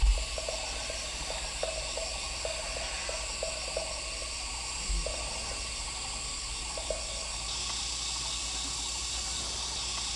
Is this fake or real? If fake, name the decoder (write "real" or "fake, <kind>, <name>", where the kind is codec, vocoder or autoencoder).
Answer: real